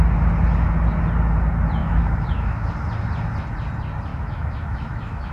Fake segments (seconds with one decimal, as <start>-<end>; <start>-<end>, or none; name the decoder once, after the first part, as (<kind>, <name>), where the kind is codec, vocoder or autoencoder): 1.8-2.7 (autoencoder, DAC-VAE); 4.1-5.3